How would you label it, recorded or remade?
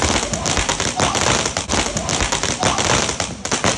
recorded